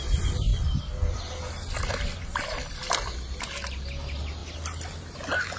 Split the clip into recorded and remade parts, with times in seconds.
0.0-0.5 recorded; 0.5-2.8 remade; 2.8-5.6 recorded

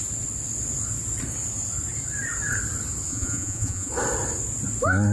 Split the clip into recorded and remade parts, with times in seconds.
0.0-3.1 recorded; 3.1-3.9 remade; 3.9-5.1 recorded

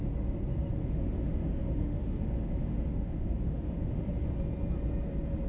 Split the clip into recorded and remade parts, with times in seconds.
0.0-0.8 recorded; 0.8-4.1 remade; 4.1-5.5 recorded

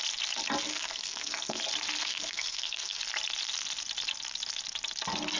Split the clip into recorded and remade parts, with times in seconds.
0.0-0.7 recorded; 0.7-1.6 remade; 1.6-2.0 recorded; 2.0-3.0 remade; 3.0-5.4 recorded

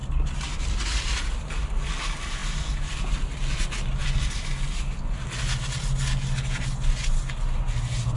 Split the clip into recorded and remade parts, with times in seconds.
0.0-1.3 remade; 1.3-2.4 recorded; 2.4-3.1 remade; 3.1-4.0 recorded; 4.0-5.0 remade; 5.0-8.2 recorded

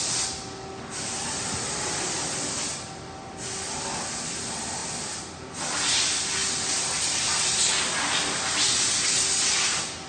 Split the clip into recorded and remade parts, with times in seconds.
0.0-10.1 recorded

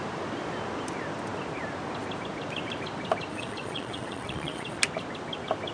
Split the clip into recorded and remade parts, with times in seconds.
0.0-3.3 recorded; 3.3-4.8 remade; 4.8-5.7 recorded